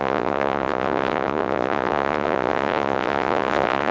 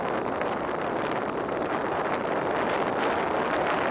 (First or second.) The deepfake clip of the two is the first